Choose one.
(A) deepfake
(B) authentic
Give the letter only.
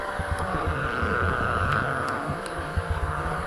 A